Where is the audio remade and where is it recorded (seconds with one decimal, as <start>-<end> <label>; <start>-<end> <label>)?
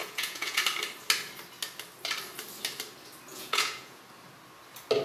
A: 0.0-0.6 remade; 0.6-3.3 recorded; 3.3-4.0 remade; 4.0-5.0 recorded